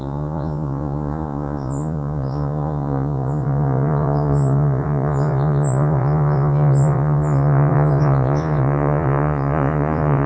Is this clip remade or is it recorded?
remade